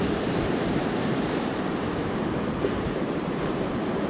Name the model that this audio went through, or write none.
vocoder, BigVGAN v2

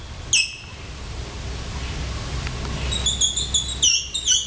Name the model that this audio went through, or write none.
none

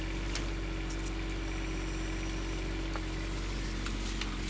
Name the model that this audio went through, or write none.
none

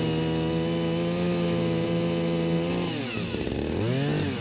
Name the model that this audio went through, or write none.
none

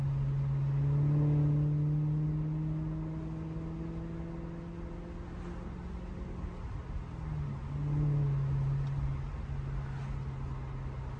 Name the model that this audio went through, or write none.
none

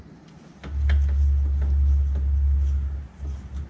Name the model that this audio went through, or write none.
none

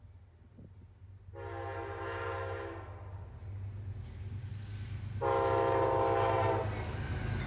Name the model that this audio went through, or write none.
none